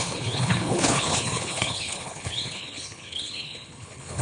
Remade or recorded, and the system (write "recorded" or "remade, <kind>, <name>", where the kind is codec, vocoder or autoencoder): remade, codec, HILCodec